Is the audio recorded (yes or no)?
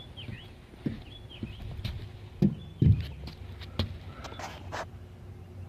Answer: yes